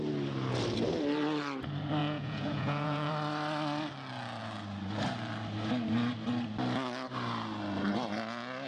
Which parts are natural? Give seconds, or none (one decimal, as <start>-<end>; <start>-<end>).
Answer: 0.0-2.0; 3.1-8.7